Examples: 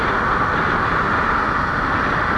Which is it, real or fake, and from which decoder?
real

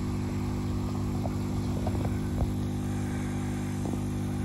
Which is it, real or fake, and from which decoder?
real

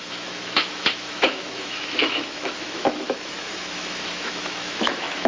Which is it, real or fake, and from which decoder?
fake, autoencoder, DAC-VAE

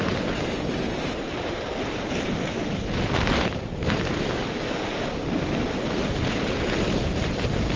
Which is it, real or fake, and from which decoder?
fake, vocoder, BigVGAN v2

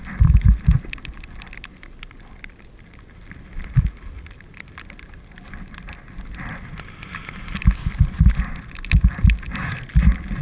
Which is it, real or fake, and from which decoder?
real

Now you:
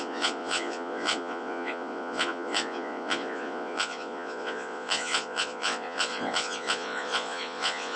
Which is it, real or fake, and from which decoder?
fake, vocoder, Vocos